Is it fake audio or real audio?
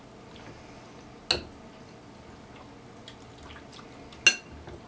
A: real